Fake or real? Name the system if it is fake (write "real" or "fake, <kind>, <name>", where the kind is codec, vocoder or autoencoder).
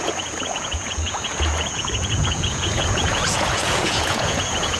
fake, vocoder, Vocos